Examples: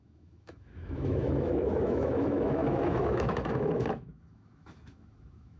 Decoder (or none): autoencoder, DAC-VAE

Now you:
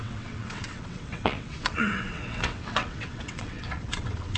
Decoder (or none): vocoder, WaveNeXt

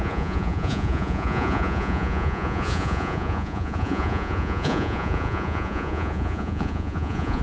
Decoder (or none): vocoder, Vocos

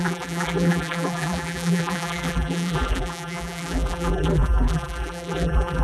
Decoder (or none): vocoder, BigVGAN v2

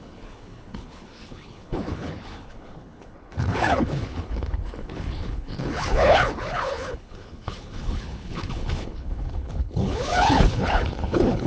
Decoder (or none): codec, HILCodec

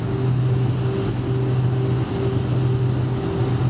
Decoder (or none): none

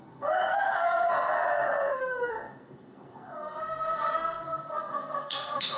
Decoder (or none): codec, SNAC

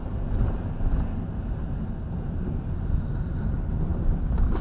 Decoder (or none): vocoder, BigVGAN v2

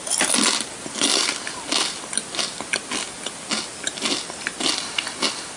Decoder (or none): none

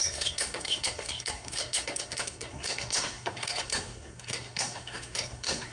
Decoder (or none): codec, SNAC